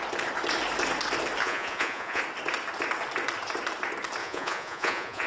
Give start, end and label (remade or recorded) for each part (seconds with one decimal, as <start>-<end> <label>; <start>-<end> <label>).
0.0-1.4 recorded; 1.4-2.2 remade; 2.2-4.2 recorded; 4.2-5.3 remade